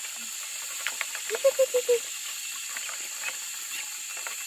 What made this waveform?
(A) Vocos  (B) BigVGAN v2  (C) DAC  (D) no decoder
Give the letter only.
D